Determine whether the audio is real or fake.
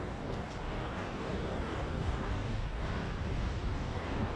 fake